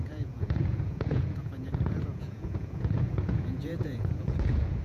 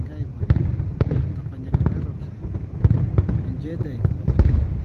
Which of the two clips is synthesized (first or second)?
first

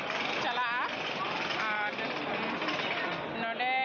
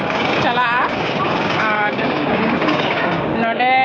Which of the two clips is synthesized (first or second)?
second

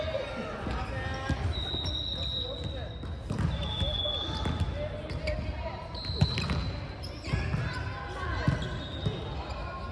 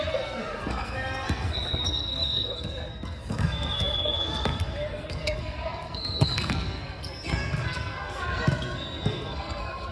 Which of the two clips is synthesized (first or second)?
second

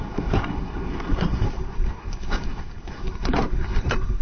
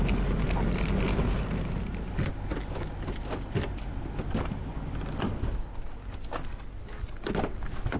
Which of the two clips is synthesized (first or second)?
first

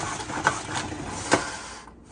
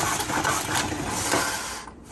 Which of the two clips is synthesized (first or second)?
second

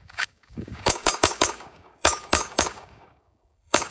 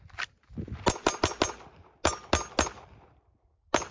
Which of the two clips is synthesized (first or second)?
first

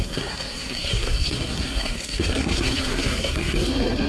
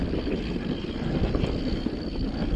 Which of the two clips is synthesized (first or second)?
first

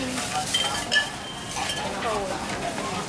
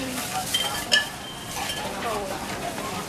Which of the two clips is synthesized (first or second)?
second